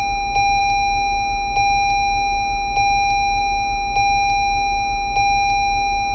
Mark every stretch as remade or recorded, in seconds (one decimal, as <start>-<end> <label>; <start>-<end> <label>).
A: 0.0-6.1 recorded